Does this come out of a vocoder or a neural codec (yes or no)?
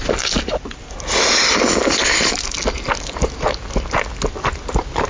no